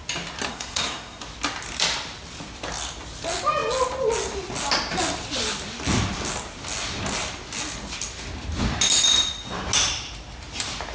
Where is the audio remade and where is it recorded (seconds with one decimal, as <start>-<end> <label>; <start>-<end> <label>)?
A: 0.0-0.5 recorded; 0.5-1.2 remade; 1.2-10.9 recorded